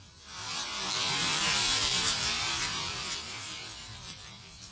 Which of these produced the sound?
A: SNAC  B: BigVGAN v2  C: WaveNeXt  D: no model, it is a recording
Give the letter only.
B